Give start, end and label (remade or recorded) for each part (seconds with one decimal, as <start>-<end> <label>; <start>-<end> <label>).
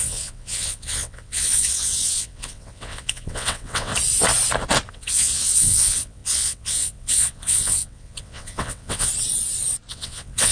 0.0-3.9 remade; 3.9-4.9 recorded; 4.9-9.1 remade; 9.1-9.9 recorded; 9.9-10.5 remade